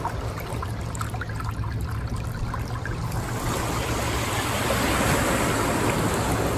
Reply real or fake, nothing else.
real